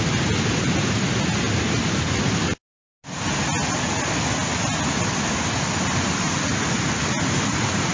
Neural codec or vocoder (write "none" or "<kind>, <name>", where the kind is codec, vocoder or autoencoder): none